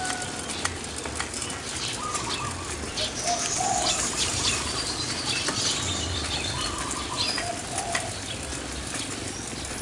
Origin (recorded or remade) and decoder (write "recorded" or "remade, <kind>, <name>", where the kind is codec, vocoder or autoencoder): recorded